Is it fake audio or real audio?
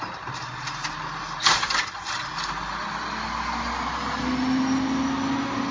real